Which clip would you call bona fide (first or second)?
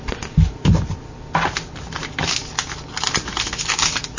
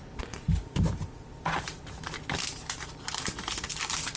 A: first